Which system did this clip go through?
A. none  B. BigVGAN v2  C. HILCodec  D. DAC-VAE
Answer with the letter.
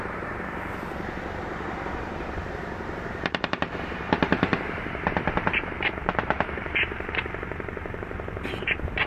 B